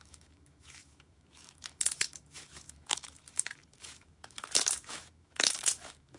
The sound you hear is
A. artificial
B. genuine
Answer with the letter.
A